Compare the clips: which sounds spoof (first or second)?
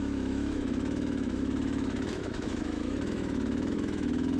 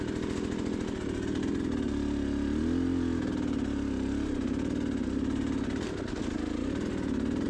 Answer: first